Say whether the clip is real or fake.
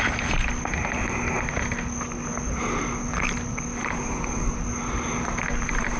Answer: real